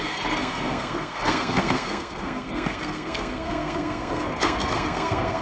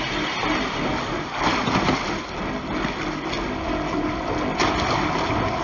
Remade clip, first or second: first